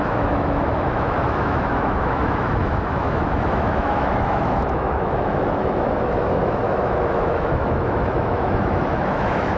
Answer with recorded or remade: remade